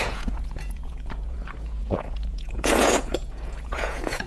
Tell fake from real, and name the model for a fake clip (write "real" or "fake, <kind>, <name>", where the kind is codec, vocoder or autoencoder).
fake, vocoder, Vocos